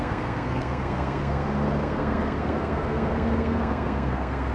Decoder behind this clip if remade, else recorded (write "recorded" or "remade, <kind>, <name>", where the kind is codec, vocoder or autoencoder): remade, codec, SNAC